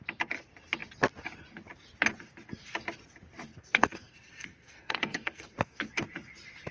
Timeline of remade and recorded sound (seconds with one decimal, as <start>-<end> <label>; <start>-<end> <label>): 0.0-3.5 recorded; 3.5-5.9 remade; 5.9-6.7 recorded